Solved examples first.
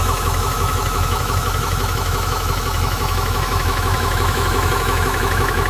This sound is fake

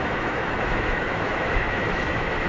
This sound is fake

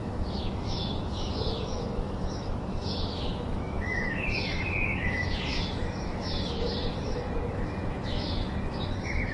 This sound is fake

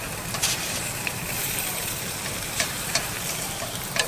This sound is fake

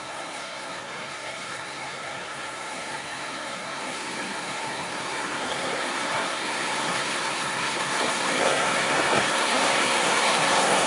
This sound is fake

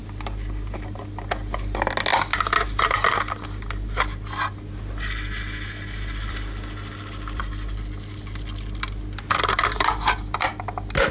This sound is real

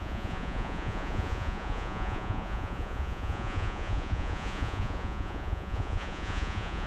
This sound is fake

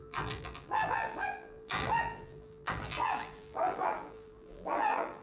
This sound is fake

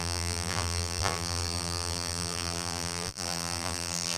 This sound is fake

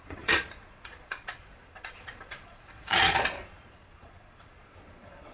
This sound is fake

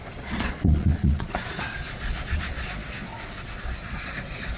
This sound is fake